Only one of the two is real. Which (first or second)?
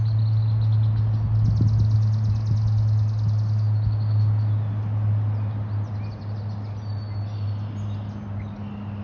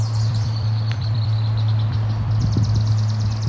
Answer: first